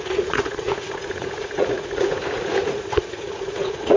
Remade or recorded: remade